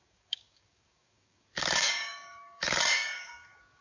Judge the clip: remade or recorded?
remade